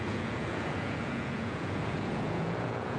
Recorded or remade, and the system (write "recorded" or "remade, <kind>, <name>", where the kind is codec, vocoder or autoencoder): remade, vocoder, Vocos